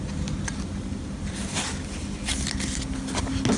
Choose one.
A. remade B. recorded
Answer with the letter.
B